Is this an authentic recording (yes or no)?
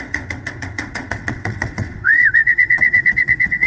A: no